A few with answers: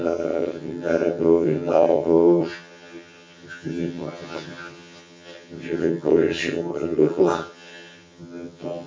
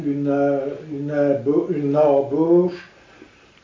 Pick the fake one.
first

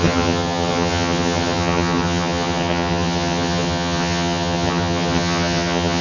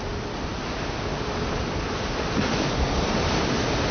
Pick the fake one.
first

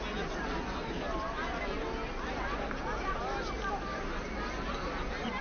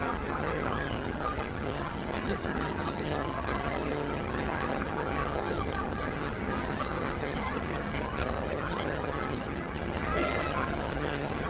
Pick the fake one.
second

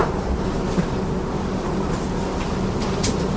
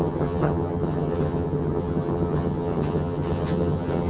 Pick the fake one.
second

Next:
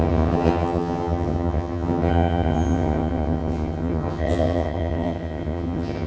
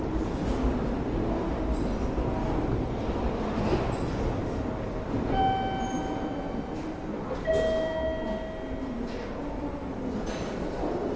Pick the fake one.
first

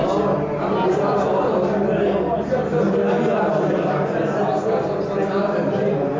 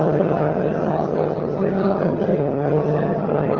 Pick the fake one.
second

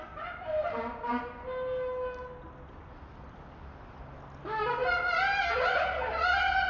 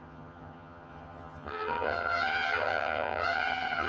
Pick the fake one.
second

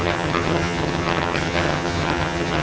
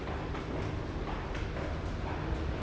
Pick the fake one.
first